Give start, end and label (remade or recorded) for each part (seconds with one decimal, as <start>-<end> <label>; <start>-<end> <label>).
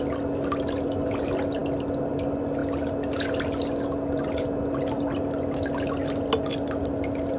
0.0-7.4 recorded